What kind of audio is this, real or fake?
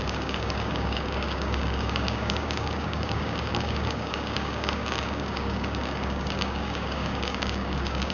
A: fake